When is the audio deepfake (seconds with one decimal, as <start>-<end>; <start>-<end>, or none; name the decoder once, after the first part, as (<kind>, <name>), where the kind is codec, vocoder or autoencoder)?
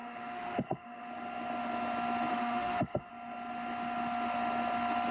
0.0-1.1 (autoencoder, DAC-VAE); 2.3-3.1